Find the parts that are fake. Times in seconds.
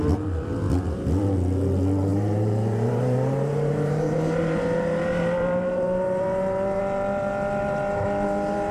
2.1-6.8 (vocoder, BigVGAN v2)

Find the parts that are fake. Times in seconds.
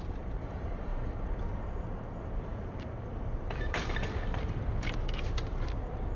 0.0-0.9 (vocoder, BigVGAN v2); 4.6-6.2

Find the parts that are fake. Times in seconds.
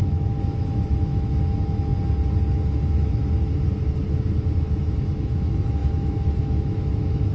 0.0-1.9 (autoencoder, DAC-VAE); 2.5-3.2; 4.0-7.3